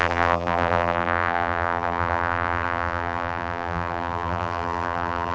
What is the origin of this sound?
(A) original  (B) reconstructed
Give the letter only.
B